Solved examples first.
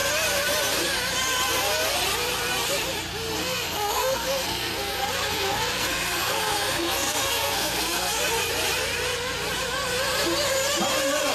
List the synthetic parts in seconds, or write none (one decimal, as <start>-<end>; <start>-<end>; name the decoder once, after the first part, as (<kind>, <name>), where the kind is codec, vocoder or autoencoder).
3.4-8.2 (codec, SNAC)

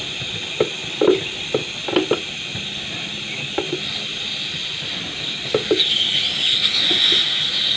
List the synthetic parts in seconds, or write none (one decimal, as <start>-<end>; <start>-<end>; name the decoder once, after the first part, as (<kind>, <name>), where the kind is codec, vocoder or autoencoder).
none

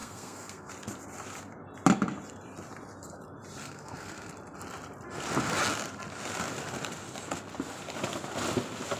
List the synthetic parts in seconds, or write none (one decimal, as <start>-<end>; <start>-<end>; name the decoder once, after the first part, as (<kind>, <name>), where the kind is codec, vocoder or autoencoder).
0.0-0.7 (codec, SNAC); 3.6-4.3

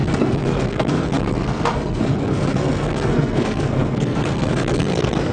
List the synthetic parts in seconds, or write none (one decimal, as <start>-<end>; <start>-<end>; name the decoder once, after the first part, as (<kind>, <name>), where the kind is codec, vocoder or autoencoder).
0.0-5.3 (codec, SNAC)

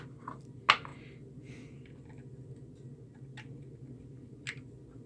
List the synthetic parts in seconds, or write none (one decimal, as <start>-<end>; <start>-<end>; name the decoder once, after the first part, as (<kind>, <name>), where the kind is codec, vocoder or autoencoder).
none

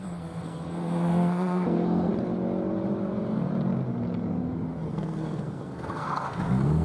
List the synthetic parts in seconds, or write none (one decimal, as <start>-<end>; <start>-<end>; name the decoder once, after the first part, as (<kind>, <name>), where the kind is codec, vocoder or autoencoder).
0.0-2.1 (codec, SNAC); 4.9-6.8